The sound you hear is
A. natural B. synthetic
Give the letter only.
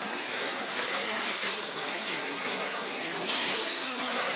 B